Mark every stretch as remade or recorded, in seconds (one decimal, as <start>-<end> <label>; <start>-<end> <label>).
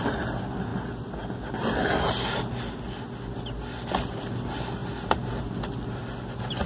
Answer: 0.0-6.7 recorded